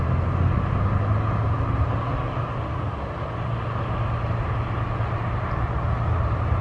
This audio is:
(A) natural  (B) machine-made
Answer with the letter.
A